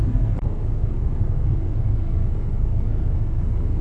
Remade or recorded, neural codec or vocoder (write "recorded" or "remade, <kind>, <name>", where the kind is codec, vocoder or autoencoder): remade, codec, SNAC